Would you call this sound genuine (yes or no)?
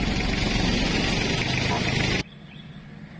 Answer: yes